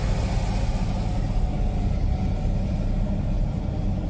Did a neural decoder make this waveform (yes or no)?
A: no